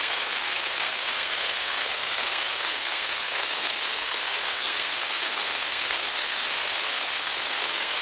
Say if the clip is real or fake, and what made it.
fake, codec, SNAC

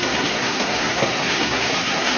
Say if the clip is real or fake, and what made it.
fake, codec, SNAC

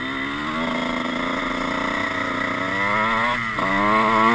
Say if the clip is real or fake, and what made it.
real